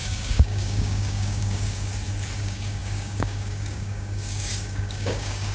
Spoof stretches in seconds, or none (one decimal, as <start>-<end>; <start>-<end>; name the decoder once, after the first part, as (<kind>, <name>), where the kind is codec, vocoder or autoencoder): 0.0-1.9 (codec, DAC); 2.4-5.5